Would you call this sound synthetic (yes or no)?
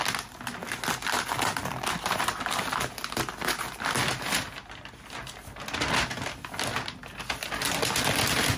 no